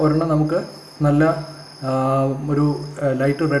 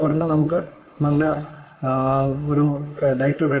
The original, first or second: first